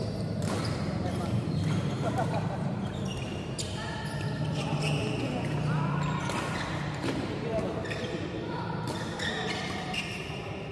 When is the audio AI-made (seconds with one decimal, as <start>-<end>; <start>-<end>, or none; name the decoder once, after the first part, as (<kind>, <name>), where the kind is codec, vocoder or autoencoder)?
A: 0.0-7.5 (vocoder, BigVGAN v2); 8.4-10.7